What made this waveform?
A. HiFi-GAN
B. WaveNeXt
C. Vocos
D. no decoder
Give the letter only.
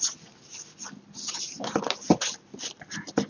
D